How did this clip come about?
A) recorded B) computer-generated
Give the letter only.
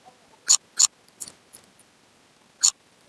A